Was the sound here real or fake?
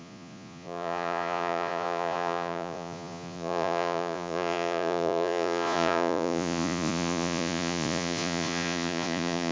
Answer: fake